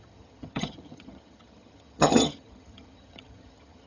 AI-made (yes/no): yes